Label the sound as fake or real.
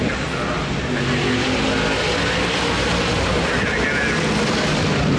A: real